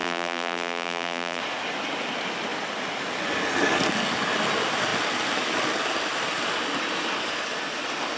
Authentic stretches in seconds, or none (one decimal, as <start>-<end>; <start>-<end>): 1.4-8.2